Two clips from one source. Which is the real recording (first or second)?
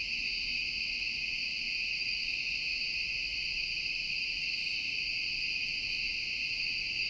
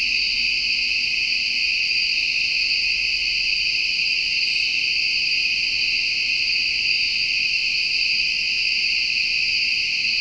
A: second